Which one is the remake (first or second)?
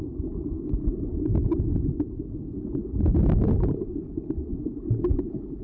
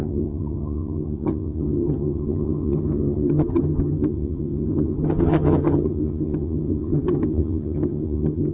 second